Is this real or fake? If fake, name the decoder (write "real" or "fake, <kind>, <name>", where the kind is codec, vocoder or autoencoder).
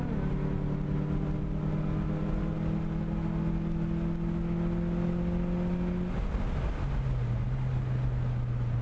real